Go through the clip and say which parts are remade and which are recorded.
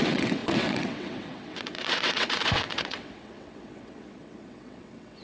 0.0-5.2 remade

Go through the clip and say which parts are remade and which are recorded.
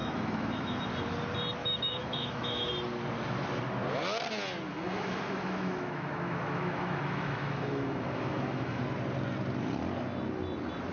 0.0-0.8 remade; 0.8-1.6 recorded; 1.6-2.7 remade; 2.7-4.7 recorded; 4.7-8.8 remade; 8.8-10.9 recorded